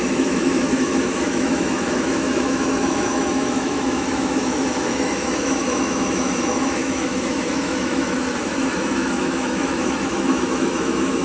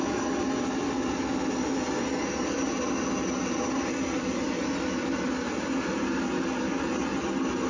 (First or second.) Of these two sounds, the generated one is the first